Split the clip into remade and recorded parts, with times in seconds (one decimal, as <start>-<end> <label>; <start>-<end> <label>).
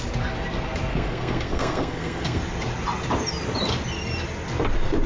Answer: 0.0-0.9 recorded; 0.9-2.4 remade; 2.4-5.1 recorded